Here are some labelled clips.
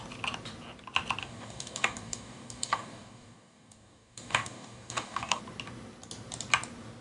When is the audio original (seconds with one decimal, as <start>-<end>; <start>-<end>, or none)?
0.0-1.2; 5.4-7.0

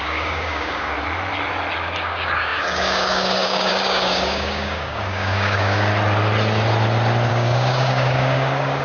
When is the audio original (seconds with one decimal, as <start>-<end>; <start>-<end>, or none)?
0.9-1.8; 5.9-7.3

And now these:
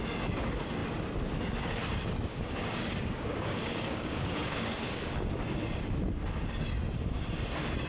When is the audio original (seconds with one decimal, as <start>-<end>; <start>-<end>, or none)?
0.0-2.3; 5.4-7.9

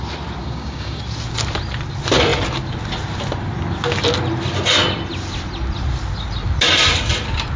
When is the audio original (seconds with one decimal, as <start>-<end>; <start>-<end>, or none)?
0.0-0.4; 1.0-7.6

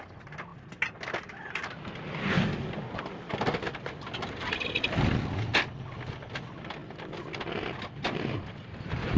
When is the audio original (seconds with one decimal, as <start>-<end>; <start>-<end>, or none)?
0.0-9.2